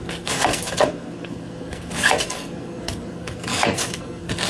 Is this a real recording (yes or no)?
no